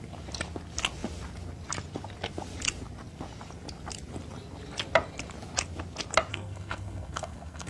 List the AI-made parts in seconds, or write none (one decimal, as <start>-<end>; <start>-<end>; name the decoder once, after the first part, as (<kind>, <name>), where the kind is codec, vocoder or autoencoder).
6.3-7.7 (codec, SNAC)